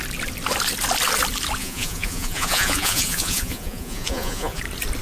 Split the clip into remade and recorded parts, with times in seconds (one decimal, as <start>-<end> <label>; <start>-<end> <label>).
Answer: 0.0-1.6 recorded; 1.6-4.6 remade; 4.6-5.0 recorded